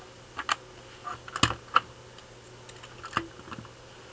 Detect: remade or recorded recorded